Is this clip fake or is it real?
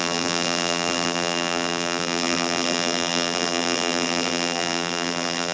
fake